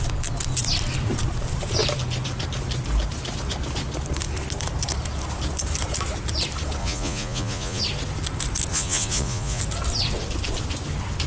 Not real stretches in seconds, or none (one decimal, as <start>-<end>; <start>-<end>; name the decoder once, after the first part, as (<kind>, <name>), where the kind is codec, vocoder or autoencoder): 6.8-7.8 (vocoder, Vocos); 8.7-9.6